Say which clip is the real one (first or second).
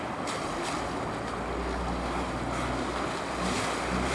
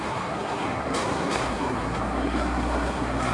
first